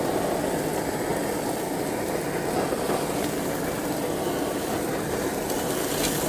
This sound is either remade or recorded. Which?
recorded